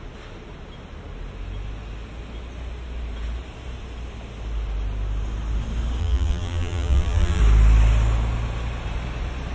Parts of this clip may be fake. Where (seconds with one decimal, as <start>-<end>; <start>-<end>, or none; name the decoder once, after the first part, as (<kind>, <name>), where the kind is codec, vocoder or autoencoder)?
6.0-7.4 (vocoder, BigVGAN v2)